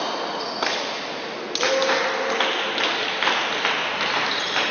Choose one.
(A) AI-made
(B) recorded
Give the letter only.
B